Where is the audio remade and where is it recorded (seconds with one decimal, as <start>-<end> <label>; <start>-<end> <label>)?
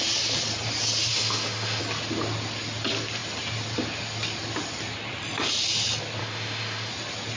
0.0-1.1 recorded; 1.1-1.8 remade; 1.8-6.2 recorded; 6.2-6.9 remade; 6.9-7.4 recorded